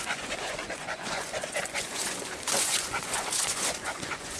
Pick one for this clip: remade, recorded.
remade